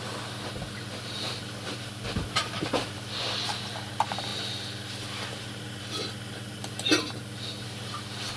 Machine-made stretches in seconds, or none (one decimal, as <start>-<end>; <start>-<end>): none